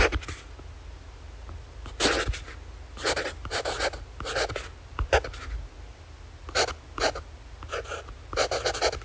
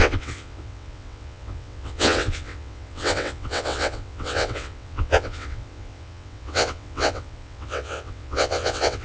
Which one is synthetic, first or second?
second